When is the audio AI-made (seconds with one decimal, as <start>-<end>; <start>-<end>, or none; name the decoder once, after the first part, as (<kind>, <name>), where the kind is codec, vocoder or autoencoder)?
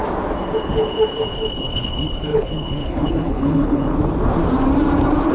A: 0.6-3.9 (codec, HILCodec)